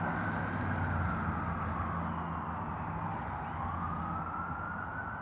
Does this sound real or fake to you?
real